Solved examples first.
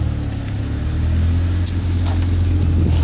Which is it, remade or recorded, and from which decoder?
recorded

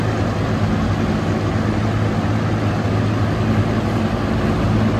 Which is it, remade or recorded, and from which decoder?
recorded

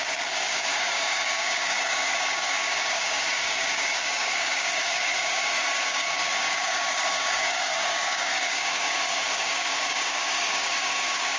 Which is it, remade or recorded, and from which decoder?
remade, codec, DAC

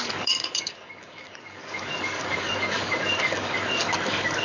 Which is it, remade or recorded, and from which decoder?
remade, codec, DAC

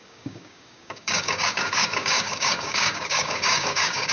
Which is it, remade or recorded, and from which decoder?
remade, codec, DAC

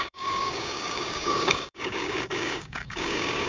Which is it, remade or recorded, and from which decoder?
remade, codec, DAC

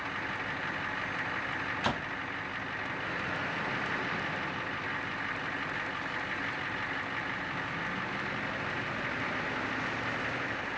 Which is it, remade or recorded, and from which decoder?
recorded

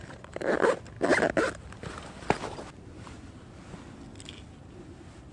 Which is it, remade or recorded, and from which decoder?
recorded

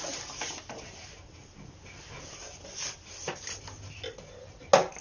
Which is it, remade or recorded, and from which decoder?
recorded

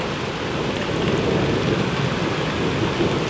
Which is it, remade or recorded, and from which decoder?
recorded